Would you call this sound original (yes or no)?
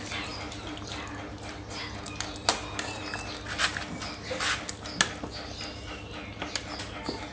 yes